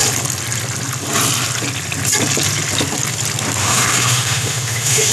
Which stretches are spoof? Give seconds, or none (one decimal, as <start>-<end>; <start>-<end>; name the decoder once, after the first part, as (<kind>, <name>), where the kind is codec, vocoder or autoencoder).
3.6-5.1 (autoencoder, DAC-VAE)

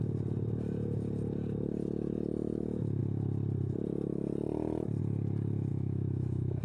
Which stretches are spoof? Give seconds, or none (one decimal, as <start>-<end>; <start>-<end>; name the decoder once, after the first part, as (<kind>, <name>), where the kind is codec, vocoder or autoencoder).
5.7-6.6 (autoencoder, DAC-VAE)

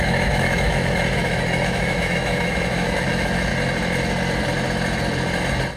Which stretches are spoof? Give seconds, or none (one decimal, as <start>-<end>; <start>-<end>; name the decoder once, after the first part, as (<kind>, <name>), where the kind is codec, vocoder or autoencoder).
0.0-3.5 (autoencoder, DAC-VAE)

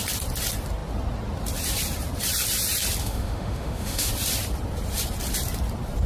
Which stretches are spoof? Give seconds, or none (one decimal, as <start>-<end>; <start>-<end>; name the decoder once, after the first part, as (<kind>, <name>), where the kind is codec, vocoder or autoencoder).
3.0-4.1 (autoencoder, DAC-VAE)

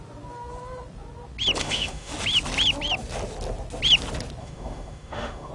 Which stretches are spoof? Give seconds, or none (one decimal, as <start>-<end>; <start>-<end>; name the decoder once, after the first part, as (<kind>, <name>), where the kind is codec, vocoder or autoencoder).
1.6-2.1 (autoencoder, DAC-VAE); 4.4-5.5

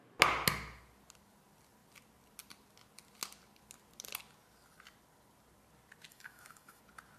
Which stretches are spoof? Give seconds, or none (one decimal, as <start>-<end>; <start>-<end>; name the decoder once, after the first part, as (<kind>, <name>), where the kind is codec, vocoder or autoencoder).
6.1-6.8 (autoencoder, DAC-VAE)

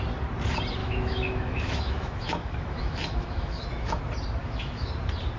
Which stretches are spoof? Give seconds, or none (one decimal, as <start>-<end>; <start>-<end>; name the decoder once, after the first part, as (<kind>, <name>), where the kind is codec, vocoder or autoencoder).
0.8-4.0 (autoencoder, DAC-VAE); 4.4-4.9